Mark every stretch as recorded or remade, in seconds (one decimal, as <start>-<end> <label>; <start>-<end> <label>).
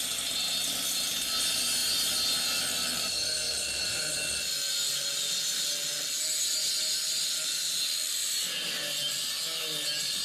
0.0-10.2 recorded